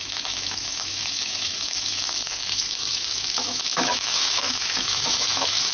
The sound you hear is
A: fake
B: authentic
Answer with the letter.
A